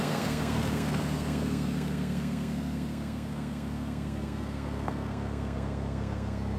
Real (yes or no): no